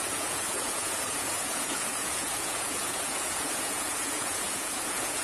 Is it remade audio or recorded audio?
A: remade